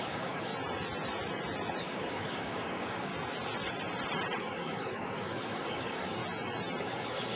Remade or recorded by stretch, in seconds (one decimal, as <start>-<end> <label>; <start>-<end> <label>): 0.0-0.5 remade; 0.5-1.8 recorded; 1.8-3.1 remade; 3.1-4.4 recorded; 4.4-6.2 remade; 6.2-6.8 recorded; 6.8-7.4 remade